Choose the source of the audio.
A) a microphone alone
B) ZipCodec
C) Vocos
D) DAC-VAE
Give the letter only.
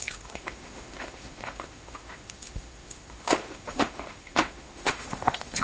D